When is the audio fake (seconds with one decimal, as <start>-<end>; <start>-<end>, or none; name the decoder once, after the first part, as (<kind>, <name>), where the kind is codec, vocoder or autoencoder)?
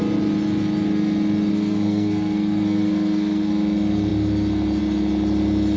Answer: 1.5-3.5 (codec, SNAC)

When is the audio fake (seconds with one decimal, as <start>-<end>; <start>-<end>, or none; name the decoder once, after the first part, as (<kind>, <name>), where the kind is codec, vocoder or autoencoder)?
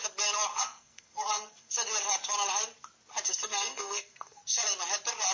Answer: 0.5-1.7 (codec, SNAC); 3.3-4.4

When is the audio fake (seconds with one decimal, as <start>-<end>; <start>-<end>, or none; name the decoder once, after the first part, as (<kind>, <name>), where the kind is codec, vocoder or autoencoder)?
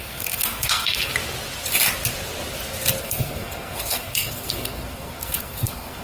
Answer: 0.0-1.1 (codec, SNAC); 3.0-6.0